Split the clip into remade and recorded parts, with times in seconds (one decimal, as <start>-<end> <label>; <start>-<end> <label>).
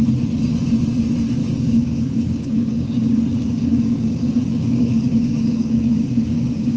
0.0-1.4 recorded; 1.4-3.2 remade; 3.2-3.6 recorded; 3.6-6.8 remade